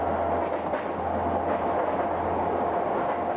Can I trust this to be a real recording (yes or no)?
yes